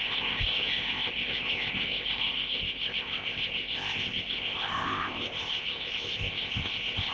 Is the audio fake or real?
fake